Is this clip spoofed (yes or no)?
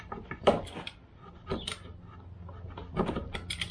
no